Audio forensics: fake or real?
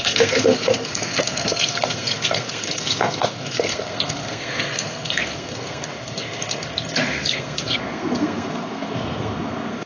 fake